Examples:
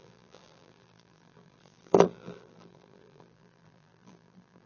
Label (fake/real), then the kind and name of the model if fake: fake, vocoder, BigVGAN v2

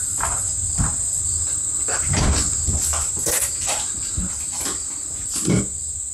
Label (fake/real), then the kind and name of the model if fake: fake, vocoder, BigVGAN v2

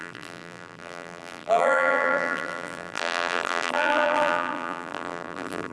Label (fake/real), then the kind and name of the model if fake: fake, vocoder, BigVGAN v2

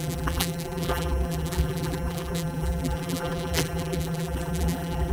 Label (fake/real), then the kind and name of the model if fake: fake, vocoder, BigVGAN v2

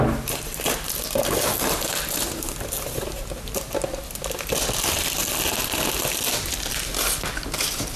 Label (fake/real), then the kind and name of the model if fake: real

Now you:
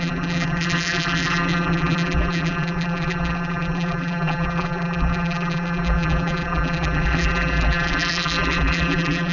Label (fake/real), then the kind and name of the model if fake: fake, vocoder, BigVGAN v2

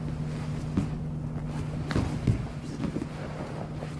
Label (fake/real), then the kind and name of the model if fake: real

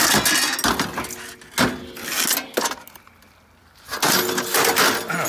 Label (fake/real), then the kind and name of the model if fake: real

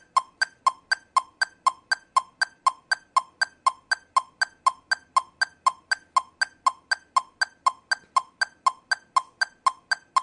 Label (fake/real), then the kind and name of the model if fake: real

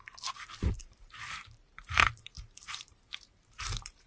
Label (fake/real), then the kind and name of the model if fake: fake, vocoder, BigVGAN v2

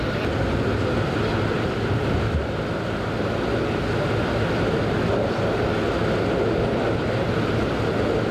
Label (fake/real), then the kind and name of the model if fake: real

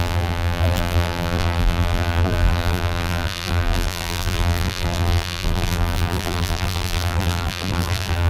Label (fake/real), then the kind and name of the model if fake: fake, vocoder, BigVGAN v2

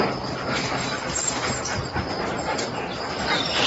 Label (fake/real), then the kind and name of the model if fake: real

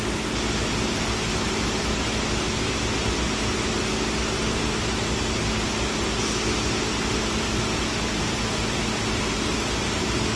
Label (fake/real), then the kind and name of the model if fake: real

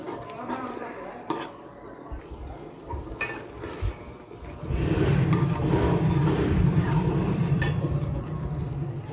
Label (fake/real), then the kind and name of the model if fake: fake, vocoder, BigVGAN v2